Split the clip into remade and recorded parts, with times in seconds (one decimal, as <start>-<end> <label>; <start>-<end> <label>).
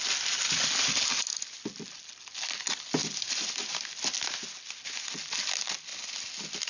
0.0-6.7 recorded